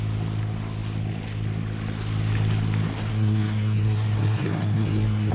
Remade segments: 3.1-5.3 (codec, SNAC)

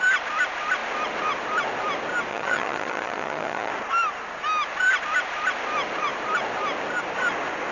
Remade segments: 2.3-3.7 (vocoder, HiFi-GAN)

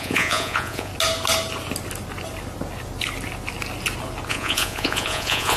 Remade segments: 0.0-0.9 (vocoder, Vocos); 4.3-5.6

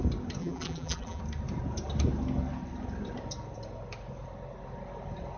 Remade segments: 0.4-1.2 (vocoder, BigVGAN v2)

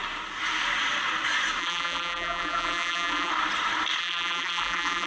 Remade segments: 1.6-3.3 (vocoder, BigVGAN v2); 4.0-5.1

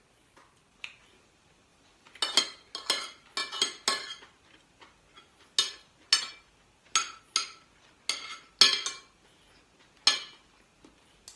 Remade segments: none

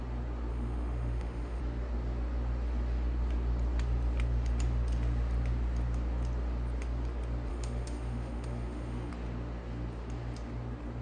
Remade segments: 0.5-1.6 (autoencoder, DAC-VAE); 7.5-9.1

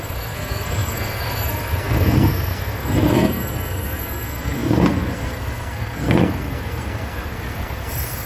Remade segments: 0.0-8.3 (codec, SNAC)